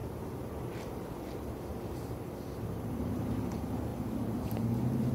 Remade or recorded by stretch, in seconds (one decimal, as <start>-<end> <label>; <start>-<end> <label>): 0.0-3.1 remade; 3.1-5.1 recorded